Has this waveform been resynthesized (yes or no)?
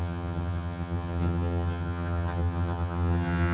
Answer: yes